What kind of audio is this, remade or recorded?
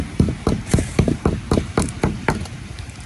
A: remade